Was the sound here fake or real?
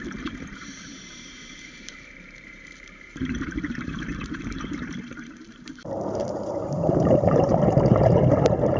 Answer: fake